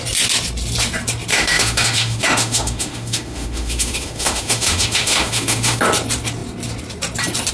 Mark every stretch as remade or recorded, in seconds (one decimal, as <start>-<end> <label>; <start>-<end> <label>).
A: 0.0-1.3 recorded; 1.3-5.8 remade; 5.8-7.5 recorded